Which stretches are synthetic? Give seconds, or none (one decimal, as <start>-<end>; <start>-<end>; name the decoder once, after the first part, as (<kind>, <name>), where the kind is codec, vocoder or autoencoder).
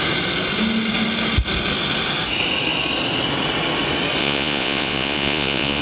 4.2-5.8 (vocoder, Vocos)